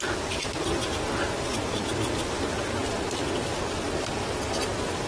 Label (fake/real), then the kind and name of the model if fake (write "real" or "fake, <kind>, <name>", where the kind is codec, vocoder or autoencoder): real